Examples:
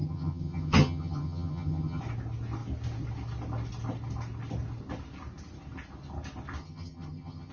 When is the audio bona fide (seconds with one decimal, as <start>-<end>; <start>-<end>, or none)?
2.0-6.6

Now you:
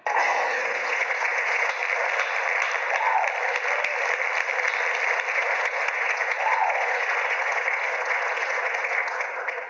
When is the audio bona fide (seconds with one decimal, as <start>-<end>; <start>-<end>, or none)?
1.8-5.3

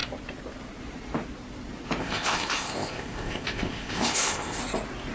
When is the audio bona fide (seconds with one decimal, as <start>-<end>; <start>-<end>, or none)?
0.0-2.0; 4.6-5.1